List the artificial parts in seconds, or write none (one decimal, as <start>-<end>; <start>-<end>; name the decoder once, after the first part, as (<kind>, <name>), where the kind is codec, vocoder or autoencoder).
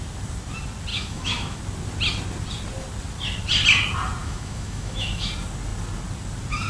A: 0.9-1.6 (autoencoder, DAC-VAE); 4.2-5.3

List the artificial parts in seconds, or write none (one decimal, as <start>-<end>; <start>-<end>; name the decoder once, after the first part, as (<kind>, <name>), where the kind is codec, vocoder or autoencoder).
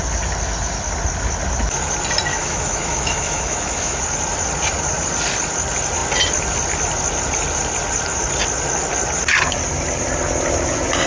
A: 2.3-4.0 (autoencoder, DAC-VAE)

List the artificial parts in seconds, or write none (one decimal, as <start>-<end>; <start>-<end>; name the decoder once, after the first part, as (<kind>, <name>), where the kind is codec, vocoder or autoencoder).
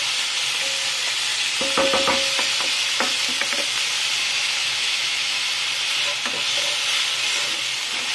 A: 4.2-5.5 (autoencoder, DAC-VAE)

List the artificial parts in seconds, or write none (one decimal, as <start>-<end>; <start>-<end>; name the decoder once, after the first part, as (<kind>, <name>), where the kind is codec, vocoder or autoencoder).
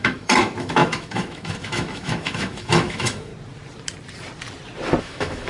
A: 0.0-3.3 (autoencoder, DAC-VAE); 5.0-5.5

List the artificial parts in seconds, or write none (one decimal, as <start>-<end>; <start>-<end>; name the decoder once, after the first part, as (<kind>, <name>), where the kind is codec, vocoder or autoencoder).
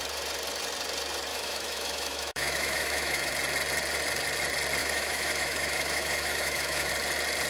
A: 1.3-3.3 (autoencoder, DAC-VAE); 4.8-6.9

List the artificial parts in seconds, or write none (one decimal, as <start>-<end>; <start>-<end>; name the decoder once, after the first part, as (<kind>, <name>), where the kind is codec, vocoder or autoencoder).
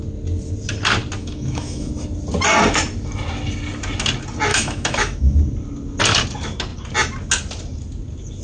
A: 1.2-1.9 (autoencoder, DAC-VAE); 4.5-5.4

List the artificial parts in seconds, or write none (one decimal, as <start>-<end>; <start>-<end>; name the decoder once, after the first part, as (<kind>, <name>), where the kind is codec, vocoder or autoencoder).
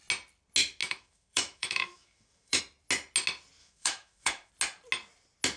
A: 0.8-2.6 (autoencoder, DAC-VAE); 3.6-4.5